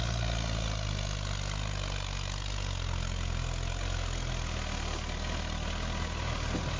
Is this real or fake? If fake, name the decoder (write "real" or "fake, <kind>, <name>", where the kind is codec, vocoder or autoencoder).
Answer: real